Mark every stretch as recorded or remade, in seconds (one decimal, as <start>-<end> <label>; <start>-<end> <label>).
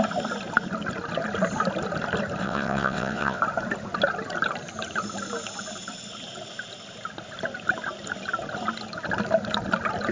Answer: 0.0-2.4 recorded; 2.4-3.4 remade; 3.4-10.1 recorded